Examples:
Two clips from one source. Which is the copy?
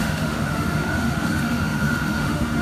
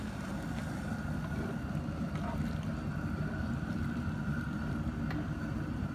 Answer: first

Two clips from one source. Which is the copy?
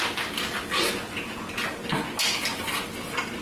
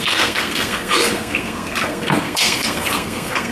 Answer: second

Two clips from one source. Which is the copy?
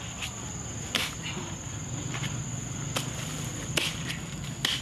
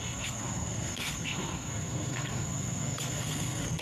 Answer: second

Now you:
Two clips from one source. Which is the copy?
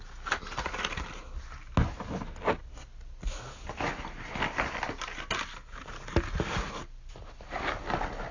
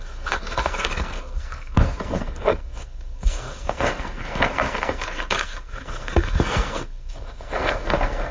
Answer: second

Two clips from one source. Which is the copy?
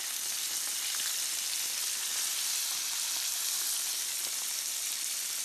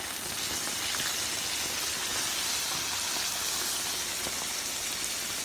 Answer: first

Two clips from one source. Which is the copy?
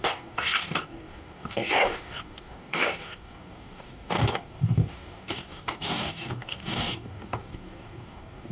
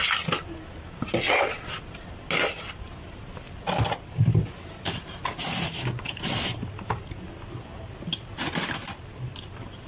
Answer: first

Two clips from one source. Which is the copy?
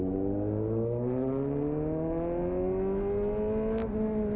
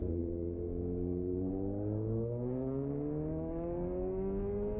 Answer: second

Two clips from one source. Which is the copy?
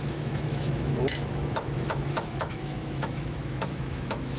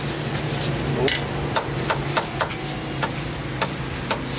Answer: first